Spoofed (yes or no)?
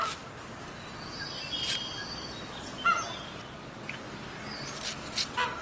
no